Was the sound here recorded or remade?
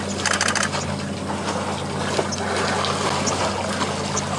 recorded